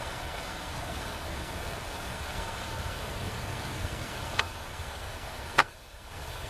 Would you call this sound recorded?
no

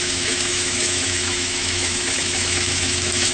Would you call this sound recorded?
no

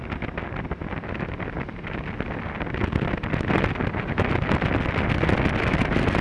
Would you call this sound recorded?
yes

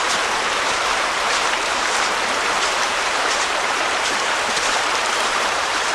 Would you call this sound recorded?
no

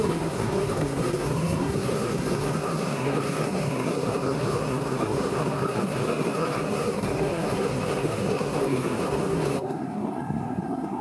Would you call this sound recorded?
no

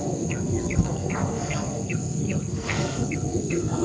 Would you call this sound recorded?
no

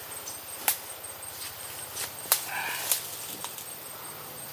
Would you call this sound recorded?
yes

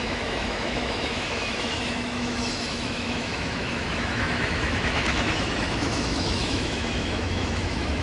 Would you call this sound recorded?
no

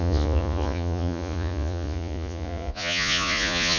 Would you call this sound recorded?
no